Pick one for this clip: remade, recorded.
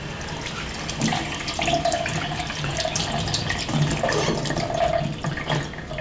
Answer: recorded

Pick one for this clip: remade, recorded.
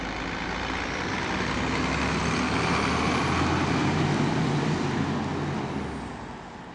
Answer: recorded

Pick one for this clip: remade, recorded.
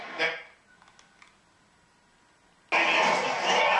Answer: recorded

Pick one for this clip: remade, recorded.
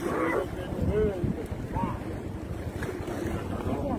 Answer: recorded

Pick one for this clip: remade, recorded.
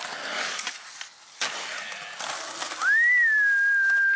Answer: recorded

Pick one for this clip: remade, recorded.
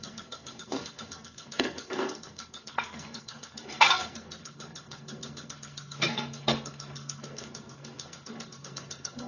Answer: remade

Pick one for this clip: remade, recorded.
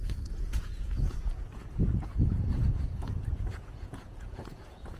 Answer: remade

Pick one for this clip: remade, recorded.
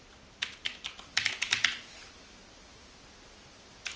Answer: recorded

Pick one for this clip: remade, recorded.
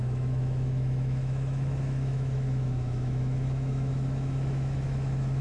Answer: remade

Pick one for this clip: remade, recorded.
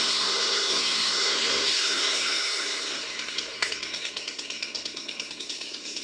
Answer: remade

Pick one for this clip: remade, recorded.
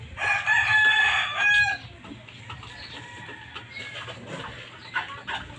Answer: recorded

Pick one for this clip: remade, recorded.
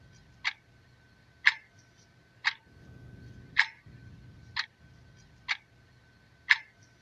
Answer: recorded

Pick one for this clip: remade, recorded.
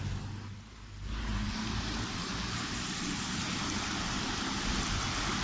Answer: recorded